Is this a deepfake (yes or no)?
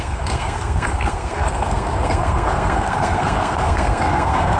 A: yes